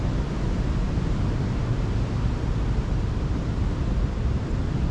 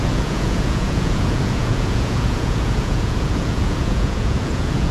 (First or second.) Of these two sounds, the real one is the first